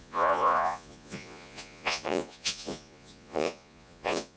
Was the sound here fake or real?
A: fake